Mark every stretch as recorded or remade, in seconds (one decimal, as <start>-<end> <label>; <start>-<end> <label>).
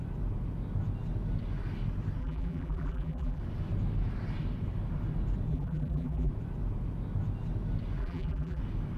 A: 0.0-2.2 recorded; 2.2-3.4 remade; 3.4-5.5 recorded; 5.5-6.3 remade; 6.3-8.0 recorded; 8.0-8.6 remade; 8.6-9.0 recorded